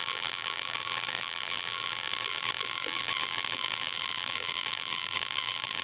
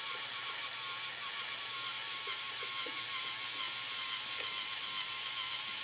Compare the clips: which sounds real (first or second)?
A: second